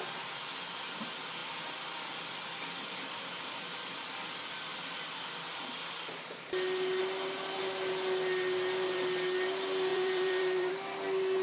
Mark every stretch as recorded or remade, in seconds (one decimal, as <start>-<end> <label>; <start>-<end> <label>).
0.0-9.9 recorded; 9.9-10.7 remade; 10.7-11.4 recorded